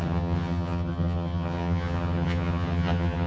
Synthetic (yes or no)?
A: yes